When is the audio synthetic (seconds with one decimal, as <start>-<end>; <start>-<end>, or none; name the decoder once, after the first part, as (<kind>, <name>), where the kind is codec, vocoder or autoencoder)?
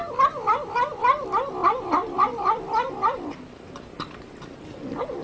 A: 1.6-4.2 (vocoder, BigVGAN v2)